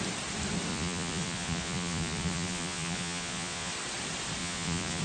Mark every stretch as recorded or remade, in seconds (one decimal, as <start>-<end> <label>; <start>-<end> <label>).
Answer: 0.0-0.7 recorded; 0.7-3.7 remade; 3.7-4.4 recorded; 4.4-5.0 remade

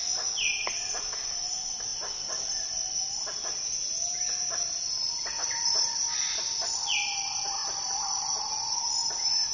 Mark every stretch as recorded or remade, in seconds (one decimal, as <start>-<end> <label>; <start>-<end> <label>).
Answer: 0.0-9.5 recorded

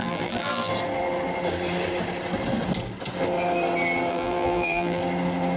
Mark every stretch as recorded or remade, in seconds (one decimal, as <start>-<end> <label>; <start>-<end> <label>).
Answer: 0.0-0.7 remade; 0.7-4.1 recorded; 4.1-5.0 remade; 5.0-5.6 recorded

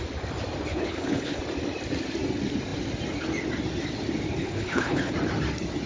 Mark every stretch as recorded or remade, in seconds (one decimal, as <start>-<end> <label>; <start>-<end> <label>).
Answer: 0.0-0.7 recorded; 0.7-1.4 remade; 1.4-4.4 recorded; 4.4-5.1 remade; 5.1-5.9 recorded

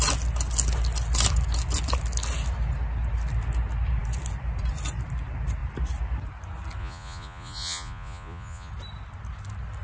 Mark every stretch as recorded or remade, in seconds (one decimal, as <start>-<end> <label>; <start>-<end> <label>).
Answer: 0.0-6.8 recorded; 6.8-8.7 remade; 8.7-9.8 recorded

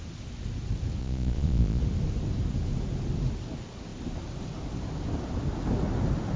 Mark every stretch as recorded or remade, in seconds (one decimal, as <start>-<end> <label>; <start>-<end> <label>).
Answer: 0.0-1.0 recorded; 1.0-1.8 remade; 1.8-6.4 recorded